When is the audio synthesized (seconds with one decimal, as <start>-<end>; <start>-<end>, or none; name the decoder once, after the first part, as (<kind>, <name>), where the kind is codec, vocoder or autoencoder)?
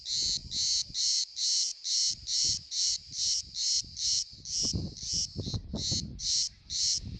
0.0-0.4 (vocoder, BigVGAN v2); 1.0-5.2; 6.2-7.2